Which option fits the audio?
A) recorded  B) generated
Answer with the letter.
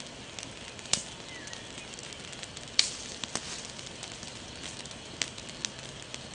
A